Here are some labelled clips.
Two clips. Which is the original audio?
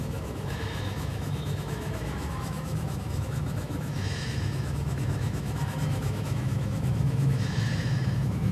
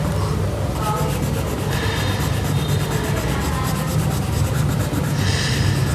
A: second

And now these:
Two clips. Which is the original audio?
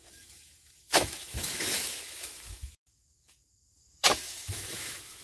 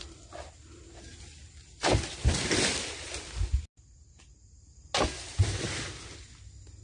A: second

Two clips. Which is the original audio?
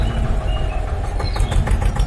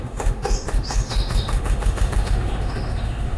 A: first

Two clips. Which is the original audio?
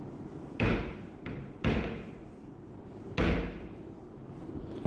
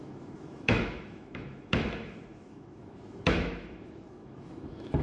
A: first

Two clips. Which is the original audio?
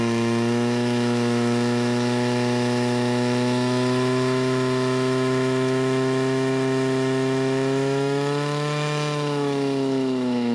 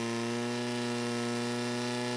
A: second